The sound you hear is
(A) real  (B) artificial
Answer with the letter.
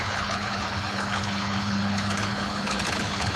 B